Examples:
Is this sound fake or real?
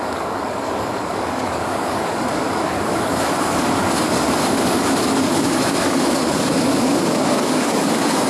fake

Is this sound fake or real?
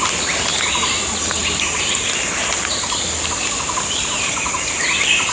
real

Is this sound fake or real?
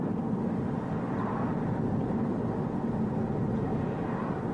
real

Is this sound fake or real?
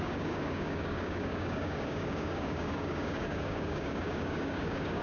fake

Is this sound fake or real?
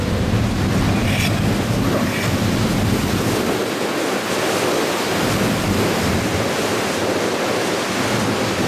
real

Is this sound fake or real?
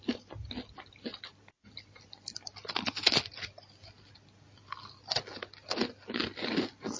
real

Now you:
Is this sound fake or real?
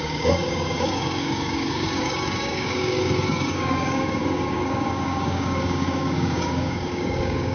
fake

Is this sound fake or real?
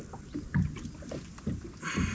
real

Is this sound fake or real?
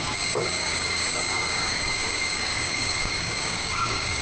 fake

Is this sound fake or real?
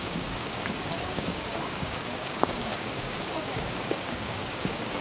fake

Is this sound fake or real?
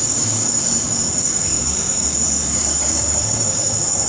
fake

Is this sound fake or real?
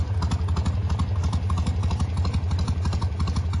real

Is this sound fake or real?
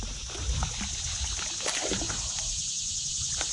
real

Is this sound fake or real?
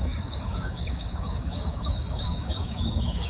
fake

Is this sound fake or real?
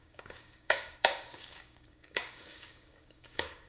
fake